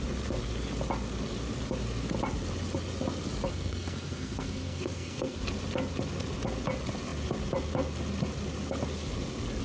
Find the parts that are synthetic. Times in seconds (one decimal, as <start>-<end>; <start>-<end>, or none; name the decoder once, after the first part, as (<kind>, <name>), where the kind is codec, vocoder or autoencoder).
3.5-5.4 (codec, SNAC)